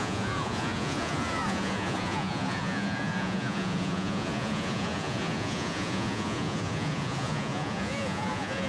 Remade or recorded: remade